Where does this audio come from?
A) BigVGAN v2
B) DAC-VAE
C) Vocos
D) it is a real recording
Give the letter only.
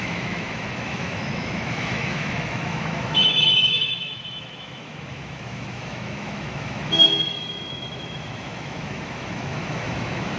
B